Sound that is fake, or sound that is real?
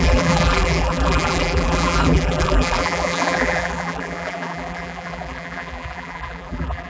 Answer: fake